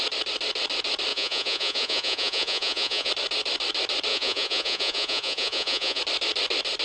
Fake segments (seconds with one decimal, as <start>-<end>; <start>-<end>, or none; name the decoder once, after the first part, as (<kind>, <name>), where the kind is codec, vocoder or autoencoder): 1.1-3.1 (vocoder, Vocos); 4.1-6.0